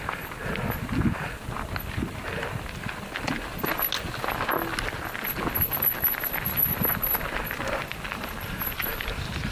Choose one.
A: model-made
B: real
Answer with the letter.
B